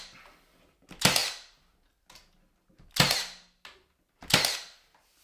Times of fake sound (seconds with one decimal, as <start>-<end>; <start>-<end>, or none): none